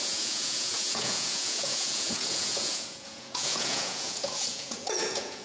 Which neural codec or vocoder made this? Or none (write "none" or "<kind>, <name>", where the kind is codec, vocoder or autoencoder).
vocoder, Vocos